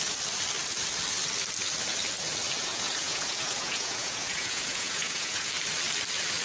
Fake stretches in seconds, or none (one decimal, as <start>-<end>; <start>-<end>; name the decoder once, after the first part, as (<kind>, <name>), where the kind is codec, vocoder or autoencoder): 2.6-5.5 (vocoder, Vocos)